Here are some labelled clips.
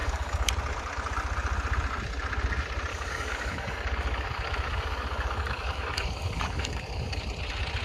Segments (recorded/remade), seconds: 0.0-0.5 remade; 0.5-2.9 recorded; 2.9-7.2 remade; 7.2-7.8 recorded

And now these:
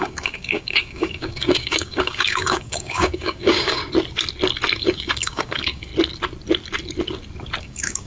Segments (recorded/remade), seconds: 0.0-3.8 remade; 3.8-4.8 recorded; 4.8-5.9 remade; 5.9-7.6 recorded; 7.6-8.1 remade

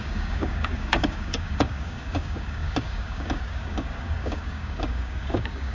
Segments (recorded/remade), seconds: 0.0-5.7 remade

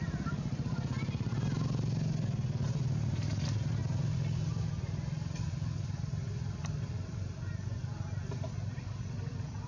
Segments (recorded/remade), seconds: 0.0-9.7 recorded